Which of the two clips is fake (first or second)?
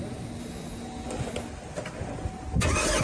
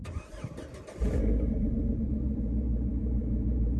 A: second